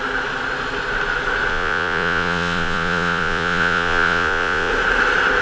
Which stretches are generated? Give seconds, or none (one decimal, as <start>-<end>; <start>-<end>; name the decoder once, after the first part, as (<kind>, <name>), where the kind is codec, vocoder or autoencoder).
1.5-4.7 (vocoder, Vocos)